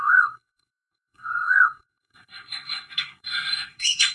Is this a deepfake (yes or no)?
yes